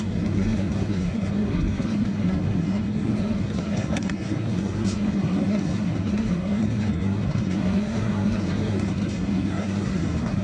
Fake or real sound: fake